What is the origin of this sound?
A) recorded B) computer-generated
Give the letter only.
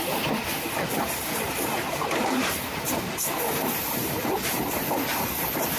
A